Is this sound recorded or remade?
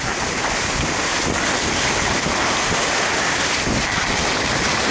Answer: recorded